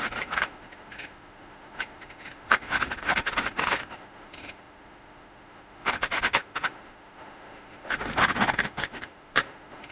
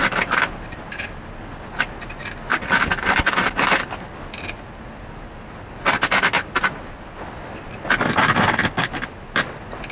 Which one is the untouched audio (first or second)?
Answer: second